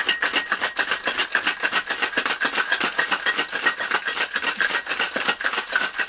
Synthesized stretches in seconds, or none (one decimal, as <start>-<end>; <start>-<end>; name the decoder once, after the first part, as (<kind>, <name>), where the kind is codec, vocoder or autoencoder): none